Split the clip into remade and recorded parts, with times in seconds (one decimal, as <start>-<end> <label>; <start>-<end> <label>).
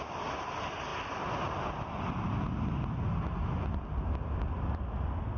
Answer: 0.0-5.4 recorded